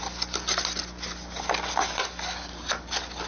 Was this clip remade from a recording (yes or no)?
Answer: no